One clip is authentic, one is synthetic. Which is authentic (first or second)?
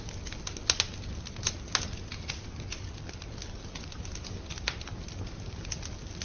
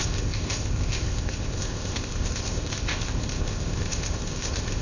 first